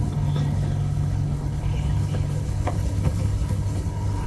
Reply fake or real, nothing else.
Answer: fake